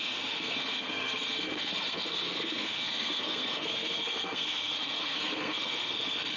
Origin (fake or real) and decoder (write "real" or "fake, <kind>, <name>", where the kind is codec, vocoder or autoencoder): fake, codec, SNAC